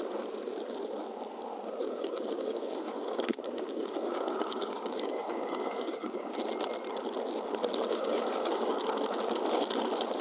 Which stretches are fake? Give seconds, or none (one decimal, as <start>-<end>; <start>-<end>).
1.8-6.4; 7.9-8.7